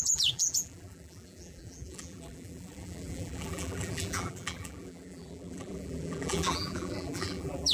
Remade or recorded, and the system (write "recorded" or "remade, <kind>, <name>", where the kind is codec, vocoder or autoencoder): remade, vocoder, BigVGAN v2